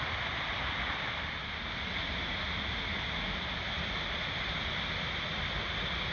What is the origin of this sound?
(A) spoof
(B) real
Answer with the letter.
B